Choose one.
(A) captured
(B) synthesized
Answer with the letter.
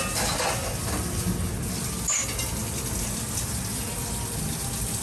A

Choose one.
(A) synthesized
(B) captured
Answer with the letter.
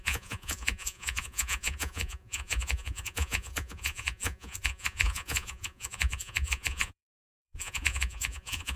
A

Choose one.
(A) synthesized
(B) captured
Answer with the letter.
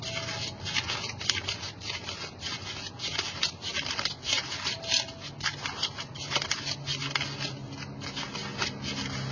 B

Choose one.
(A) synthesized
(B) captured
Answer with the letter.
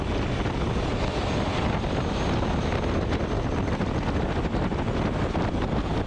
B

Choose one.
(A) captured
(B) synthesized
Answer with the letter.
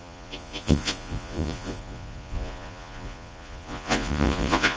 B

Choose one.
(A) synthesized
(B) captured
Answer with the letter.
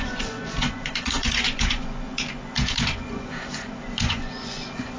A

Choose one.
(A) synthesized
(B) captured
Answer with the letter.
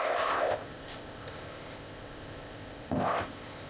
A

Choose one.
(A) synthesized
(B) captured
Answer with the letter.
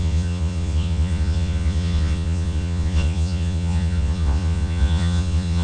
A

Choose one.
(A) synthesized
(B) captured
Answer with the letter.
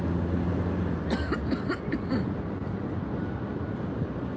B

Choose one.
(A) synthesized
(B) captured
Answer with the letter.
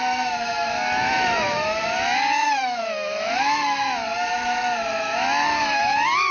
A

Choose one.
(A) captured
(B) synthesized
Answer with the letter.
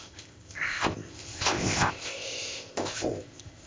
B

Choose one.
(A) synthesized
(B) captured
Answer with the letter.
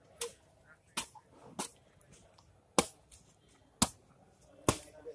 B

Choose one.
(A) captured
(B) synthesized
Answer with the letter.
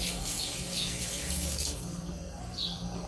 B